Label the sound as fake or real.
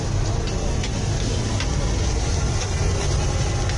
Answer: real